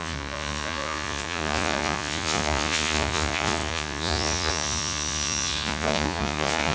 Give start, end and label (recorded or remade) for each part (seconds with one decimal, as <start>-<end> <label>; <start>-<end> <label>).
0.0-6.7 remade